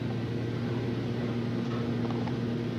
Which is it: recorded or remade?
recorded